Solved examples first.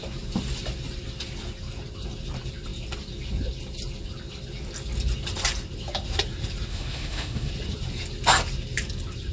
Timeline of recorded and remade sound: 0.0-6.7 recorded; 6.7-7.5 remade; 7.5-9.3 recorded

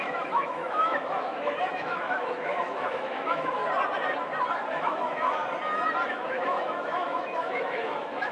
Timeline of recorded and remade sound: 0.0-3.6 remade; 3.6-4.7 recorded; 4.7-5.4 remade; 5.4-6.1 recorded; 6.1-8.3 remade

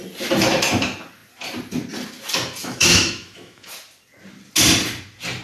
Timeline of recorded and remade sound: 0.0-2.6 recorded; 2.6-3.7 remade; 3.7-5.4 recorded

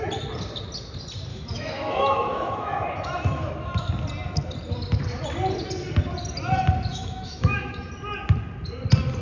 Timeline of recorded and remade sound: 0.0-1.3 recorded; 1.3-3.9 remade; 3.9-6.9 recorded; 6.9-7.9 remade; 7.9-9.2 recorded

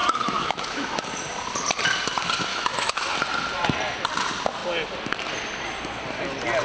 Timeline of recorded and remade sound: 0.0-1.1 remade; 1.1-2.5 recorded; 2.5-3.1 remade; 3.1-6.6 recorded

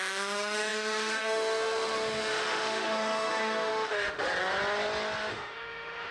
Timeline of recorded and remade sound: 0.0-4.3 remade; 4.3-5.3 recorded; 5.3-6.1 remade

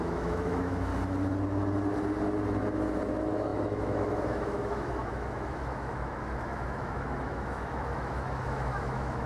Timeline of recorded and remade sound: 0.0-0.9 remade; 0.9-3.1 recorded; 3.1-9.3 remade

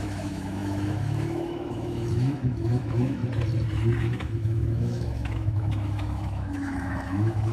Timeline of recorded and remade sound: 0.0-3.2 remade; 3.2-4.0 recorded; 4.0-7.5 remade